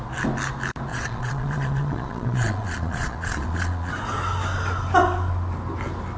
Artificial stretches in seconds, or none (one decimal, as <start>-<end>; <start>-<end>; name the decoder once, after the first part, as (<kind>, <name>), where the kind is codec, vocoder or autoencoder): 0.9-3.9 (vocoder, Vocos)